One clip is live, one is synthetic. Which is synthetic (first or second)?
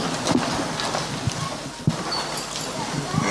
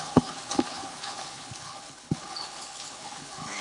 second